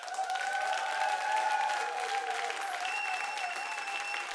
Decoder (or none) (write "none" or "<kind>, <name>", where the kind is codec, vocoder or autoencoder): none